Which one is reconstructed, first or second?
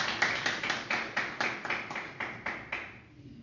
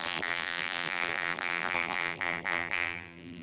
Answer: second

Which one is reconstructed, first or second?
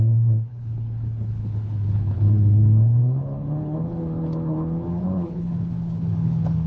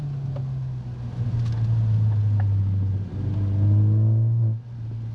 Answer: first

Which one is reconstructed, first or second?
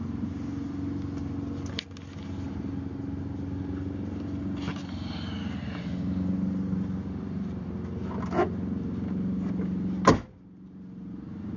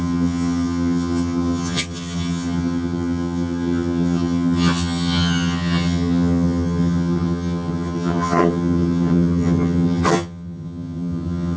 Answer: second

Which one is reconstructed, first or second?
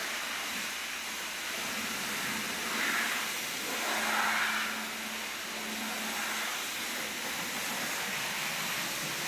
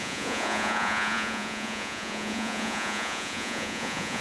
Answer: second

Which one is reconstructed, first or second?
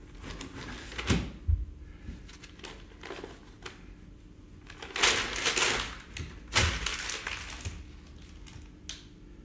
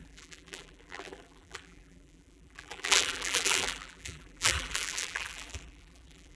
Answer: second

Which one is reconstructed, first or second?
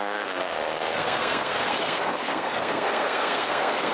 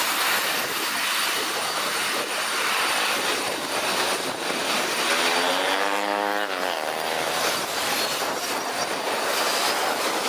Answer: first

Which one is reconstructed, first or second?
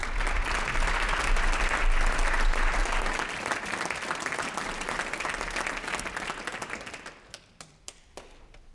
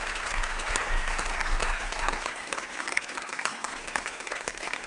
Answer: second